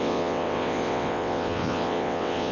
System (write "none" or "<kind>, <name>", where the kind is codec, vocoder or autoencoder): vocoder, WaveNeXt